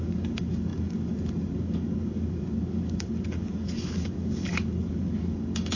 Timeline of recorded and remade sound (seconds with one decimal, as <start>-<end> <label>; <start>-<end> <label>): 0.0-5.8 remade